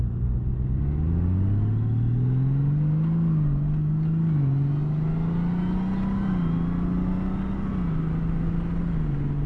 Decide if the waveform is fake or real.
real